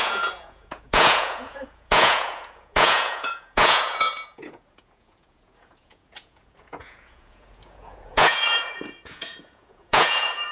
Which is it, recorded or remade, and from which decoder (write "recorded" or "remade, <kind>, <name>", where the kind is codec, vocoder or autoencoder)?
remade, vocoder, Vocos